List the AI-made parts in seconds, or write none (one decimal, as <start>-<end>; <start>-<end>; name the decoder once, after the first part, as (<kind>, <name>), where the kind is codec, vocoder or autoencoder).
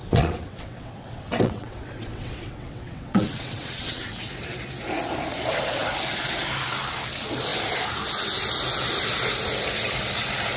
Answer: 0.0-4.1 (vocoder, WaveNeXt)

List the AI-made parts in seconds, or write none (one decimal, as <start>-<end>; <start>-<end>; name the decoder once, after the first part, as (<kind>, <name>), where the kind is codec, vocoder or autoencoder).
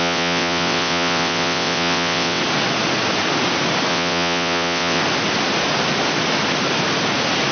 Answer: 0.0-2.4 (vocoder, WaveNeXt); 3.9-5.0